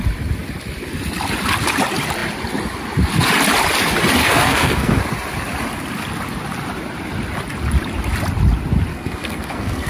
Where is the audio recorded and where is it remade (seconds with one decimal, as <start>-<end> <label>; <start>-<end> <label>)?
0.0-4.2 recorded; 4.2-5.0 remade; 5.0-8.9 recorded; 8.9-9.9 remade